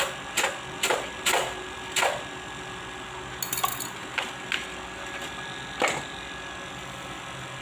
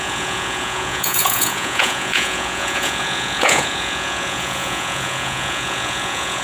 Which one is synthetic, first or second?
second